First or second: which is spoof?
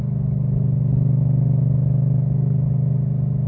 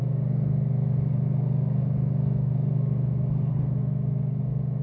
second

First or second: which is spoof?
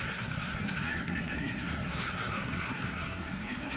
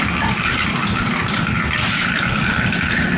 first